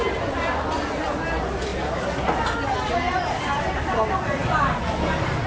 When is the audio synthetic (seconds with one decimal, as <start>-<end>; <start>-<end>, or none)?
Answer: 0.0-1.7; 3.6-4.4; 5.0-5.5